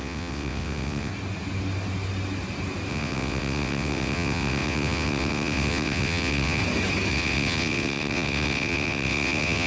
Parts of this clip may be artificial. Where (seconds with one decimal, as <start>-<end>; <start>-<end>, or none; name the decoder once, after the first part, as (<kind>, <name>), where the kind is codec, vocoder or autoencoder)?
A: 0.0-1.1 (vocoder, WaveNeXt); 2.9-6.6; 7.1-9.7